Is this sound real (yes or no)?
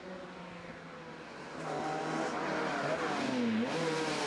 yes